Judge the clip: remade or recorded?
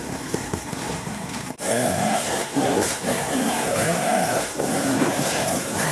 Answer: remade